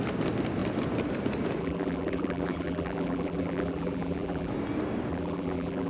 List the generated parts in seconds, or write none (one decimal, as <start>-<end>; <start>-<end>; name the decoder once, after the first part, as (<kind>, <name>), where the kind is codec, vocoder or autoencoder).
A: 1.6-4.5 (vocoder, BigVGAN v2); 5.1-5.9